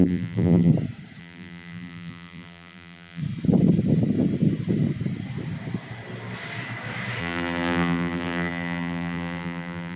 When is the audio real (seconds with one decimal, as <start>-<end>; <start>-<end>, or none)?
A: 0.7-1.2; 3.2-7.2